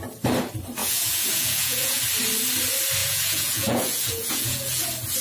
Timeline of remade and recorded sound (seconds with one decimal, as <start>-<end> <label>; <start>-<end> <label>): 0.0-0.8 recorded; 0.8-2.0 remade; 2.0-3.0 recorded; 3.0-4.8 remade; 4.8-5.2 recorded

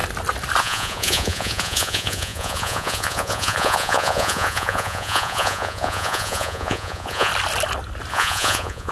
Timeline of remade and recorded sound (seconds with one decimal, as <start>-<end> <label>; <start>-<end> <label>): 0.0-0.6 recorded; 0.6-7.3 remade; 7.3-8.1 recorded; 8.1-8.9 remade